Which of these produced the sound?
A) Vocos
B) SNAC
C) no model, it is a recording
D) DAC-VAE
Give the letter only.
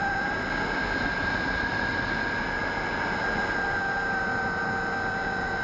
C